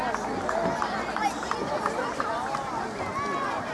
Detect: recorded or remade recorded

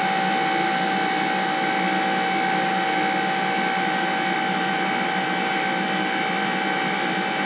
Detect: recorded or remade recorded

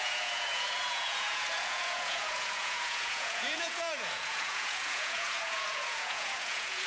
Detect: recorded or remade remade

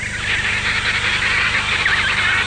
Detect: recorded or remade recorded